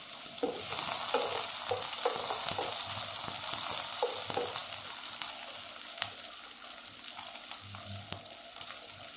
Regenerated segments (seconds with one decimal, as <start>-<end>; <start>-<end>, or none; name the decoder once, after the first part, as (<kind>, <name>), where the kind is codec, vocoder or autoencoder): none